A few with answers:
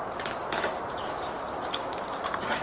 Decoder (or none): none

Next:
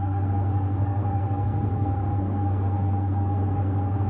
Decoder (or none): codec, SNAC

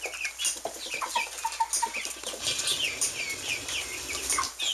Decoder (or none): none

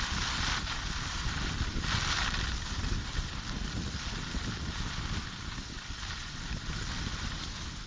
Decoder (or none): none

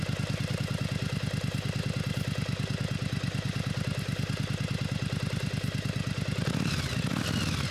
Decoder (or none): none